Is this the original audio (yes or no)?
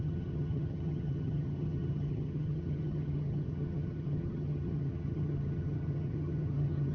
no